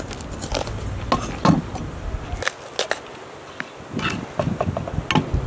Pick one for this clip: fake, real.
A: real